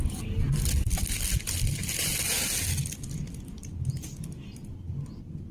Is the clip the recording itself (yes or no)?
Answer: yes